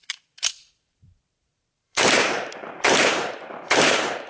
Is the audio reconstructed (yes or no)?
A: yes